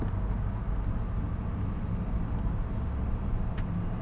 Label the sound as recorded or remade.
recorded